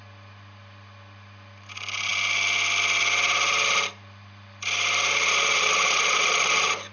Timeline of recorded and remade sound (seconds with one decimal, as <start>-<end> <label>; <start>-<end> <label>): 0.0-6.9 recorded